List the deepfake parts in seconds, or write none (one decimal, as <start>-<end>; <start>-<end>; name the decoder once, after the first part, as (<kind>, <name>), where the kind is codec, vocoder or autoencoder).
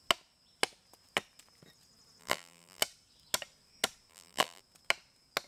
2.2-2.8 (vocoder, BigVGAN v2); 4.1-4.6